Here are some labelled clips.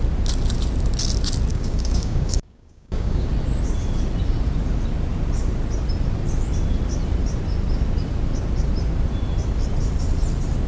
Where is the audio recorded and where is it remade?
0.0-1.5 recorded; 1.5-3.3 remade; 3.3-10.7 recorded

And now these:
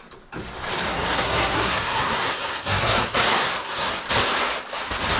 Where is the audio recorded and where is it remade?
0.0-0.9 recorded; 0.9-4.0 remade; 4.0-5.2 recorded